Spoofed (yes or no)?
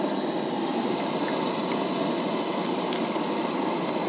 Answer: no